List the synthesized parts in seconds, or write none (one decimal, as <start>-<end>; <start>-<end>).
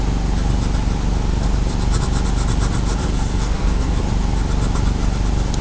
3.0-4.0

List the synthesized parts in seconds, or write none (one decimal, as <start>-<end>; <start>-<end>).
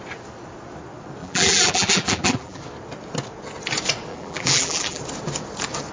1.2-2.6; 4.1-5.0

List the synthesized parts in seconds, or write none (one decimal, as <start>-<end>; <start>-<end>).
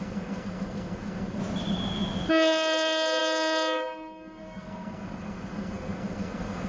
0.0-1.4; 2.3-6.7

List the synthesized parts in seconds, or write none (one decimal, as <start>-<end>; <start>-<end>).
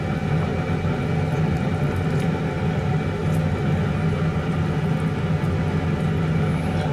none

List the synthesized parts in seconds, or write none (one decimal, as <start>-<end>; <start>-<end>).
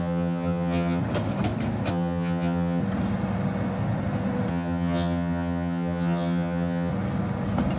0.0-1.0; 1.9-2.8; 4.5-6.9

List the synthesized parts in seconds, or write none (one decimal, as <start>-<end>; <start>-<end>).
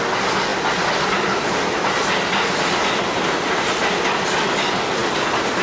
none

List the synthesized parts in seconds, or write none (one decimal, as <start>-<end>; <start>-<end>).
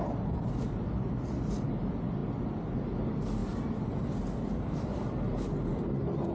none